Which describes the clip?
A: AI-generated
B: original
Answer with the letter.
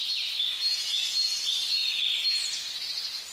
B